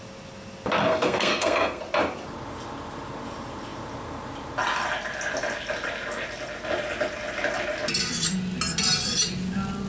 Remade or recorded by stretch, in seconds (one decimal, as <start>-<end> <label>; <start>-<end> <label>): 0.0-0.8 recorded; 0.8-1.8 remade; 1.8-9.9 recorded